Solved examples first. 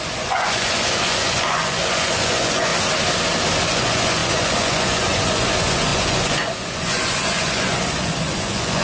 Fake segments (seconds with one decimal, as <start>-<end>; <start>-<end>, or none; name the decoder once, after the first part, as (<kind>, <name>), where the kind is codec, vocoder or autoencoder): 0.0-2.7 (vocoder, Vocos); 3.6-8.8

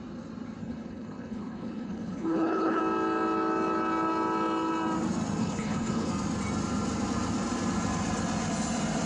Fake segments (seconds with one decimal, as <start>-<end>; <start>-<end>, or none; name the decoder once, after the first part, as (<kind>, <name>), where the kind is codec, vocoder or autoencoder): 0.6-2.8 (codec, HILCodec); 5.4-6.1

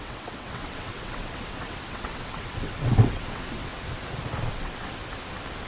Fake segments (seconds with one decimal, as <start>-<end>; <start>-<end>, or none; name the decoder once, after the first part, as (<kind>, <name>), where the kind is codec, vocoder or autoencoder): 0.0-3.7 (vocoder, WaveNeXt); 4.5-5.0

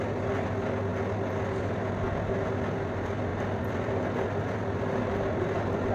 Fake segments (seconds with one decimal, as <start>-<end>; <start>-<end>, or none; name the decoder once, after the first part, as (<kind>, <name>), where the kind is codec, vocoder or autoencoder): 3.3-5.9 (vocoder, BigVGAN v2)

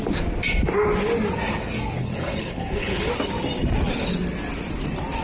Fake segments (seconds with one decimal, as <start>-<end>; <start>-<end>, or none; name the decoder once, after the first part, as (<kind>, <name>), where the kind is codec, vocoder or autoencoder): 2.0-3.1 (codec, HILCodec)